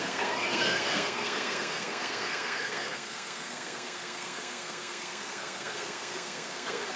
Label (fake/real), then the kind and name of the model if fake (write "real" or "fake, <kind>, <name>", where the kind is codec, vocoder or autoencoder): fake, codec, SNAC